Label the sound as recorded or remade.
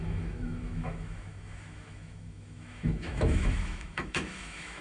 remade